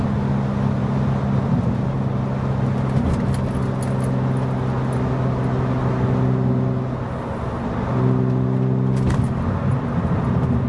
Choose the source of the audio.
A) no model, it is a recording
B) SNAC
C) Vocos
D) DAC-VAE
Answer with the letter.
A